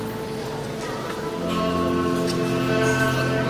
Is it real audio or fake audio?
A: real